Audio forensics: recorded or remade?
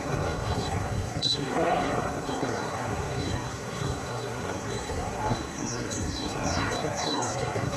remade